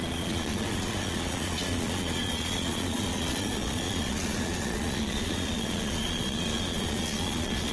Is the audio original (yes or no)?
no